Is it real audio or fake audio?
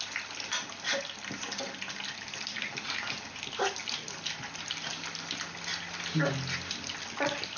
real